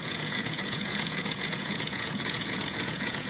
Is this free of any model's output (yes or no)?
no